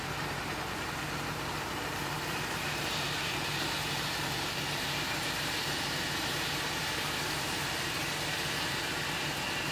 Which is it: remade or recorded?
remade